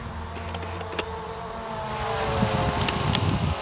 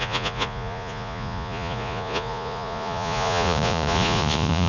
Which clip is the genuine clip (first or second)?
first